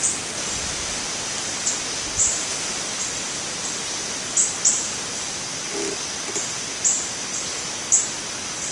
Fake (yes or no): no